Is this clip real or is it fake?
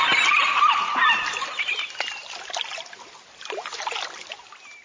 real